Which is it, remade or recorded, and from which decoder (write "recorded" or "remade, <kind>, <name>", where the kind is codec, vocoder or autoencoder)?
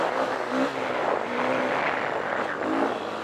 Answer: recorded